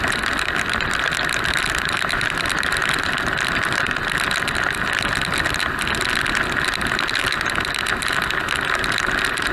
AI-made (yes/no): no